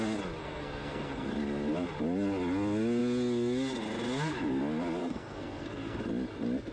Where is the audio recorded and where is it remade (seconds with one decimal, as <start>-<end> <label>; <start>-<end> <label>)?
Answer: 0.0-0.4 recorded; 0.4-1.3 remade; 1.3-5.0 recorded; 5.0-6.0 remade; 6.0-6.7 recorded